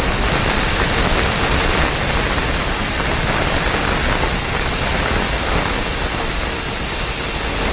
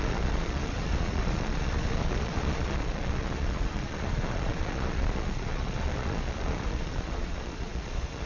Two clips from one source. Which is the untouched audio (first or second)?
first